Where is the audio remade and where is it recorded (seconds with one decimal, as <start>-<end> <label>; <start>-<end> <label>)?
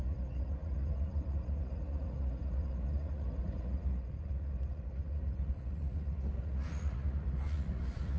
0.0-8.2 remade